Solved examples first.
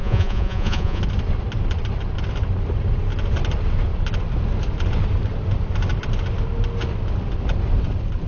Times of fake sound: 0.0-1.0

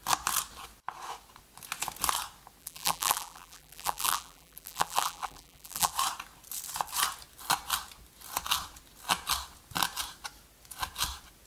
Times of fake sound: 2.6-5.9

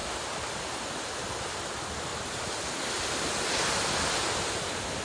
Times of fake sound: none

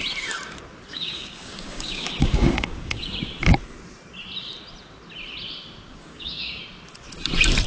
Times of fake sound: 0.9-3.1; 5.9-6.6

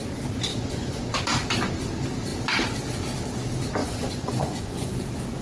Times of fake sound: 0.5-1.1; 3.8-5.0